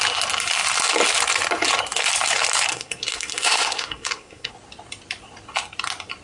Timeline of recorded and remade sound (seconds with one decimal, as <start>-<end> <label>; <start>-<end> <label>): 0.0-2.7 recorded; 2.7-4.5 remade; 4.5-6.2 recorded